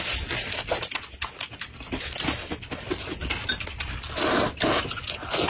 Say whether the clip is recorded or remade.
recorded